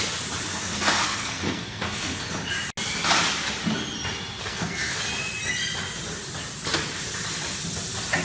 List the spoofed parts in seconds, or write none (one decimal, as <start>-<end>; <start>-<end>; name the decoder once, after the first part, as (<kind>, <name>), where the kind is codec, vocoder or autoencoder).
0.5-2.2 (codec, SNAC); 4.4-5.0